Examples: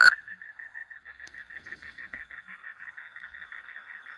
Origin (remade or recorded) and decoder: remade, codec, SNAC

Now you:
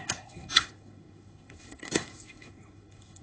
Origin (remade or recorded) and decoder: remade, codec, SNAC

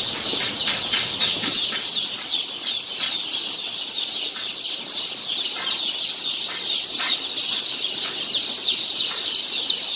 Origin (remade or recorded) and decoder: recorded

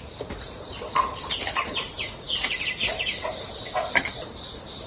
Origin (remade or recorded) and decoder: recorded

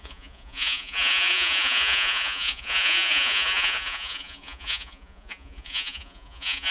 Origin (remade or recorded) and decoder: remade, vocoder, Vocos